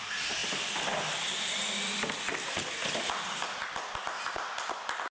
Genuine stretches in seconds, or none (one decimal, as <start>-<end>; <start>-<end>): 0.0-5.1